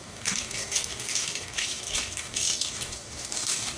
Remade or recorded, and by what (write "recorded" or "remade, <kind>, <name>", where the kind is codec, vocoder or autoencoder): remade, codec, DAC